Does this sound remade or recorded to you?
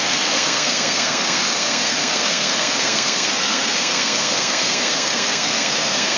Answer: remade